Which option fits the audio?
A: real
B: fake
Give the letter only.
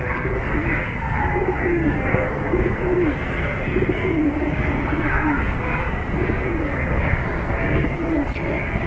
B